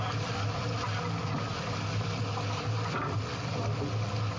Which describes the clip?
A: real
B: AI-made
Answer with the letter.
A